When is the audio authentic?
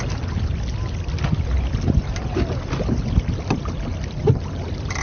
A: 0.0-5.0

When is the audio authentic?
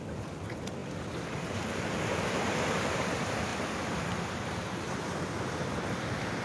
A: 3.5-4.2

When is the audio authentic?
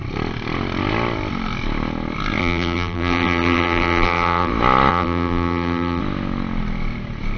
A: 0.0-2.4; 4.5-4.9; 6.0-7.4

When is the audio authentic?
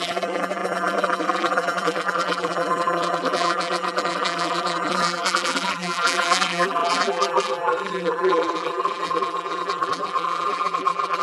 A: none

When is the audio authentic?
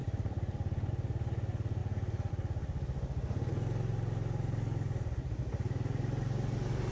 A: 0.9-6.9